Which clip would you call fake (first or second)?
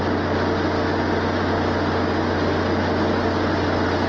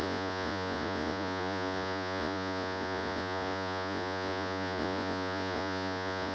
second